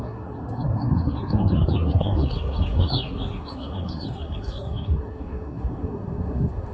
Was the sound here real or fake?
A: fake